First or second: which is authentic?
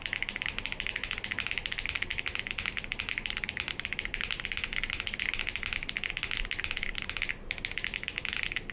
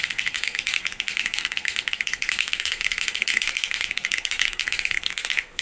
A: first